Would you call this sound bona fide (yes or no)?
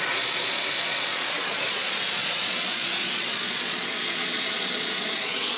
no